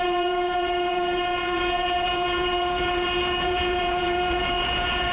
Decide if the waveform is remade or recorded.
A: remade